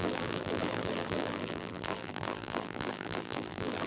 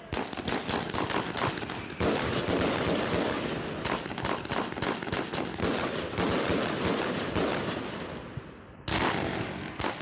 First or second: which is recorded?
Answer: second